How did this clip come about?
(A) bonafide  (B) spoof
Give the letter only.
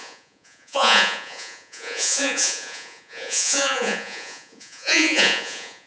B